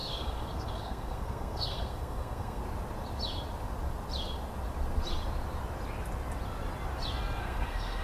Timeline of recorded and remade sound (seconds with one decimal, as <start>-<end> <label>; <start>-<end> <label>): 0.0-2.6 remade; 2.6-7.4 recorded; 7.4-8.0 remade